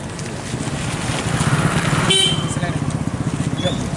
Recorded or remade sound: recorded